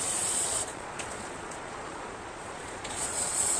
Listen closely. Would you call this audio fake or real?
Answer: fake